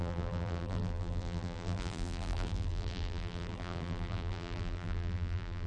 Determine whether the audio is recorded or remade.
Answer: remade